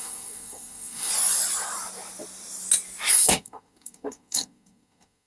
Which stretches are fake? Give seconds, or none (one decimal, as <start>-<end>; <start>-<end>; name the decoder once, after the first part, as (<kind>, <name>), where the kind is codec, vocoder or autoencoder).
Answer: 0.0-1.1 (codec, SNAC); 3.1-5.3